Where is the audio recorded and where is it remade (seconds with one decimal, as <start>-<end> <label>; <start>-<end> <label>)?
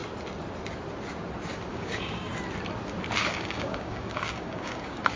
0.0-1.7 recorded; 1.7-2.3 remade; 2.3-3.2 recorded; 3.2-5.2 remade